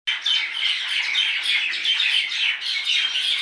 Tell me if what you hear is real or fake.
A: real